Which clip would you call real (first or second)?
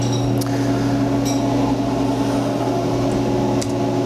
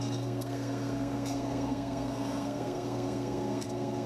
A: first